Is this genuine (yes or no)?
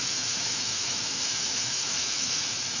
no